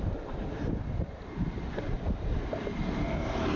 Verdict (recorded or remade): recorded